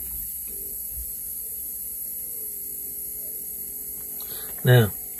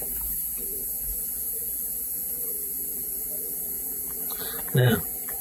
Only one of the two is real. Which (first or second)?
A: first